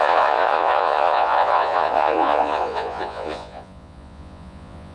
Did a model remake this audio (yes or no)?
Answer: yes